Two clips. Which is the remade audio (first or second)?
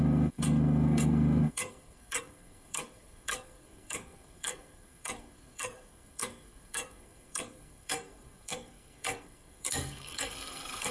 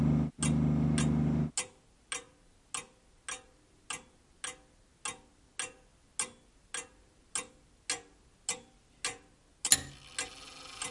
first